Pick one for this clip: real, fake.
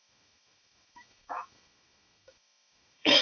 fake